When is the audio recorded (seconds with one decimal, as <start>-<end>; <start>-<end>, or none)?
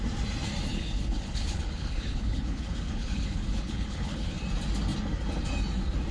0.0-0.7; 4.4-6.1